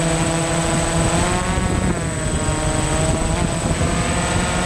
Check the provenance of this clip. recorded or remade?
recorded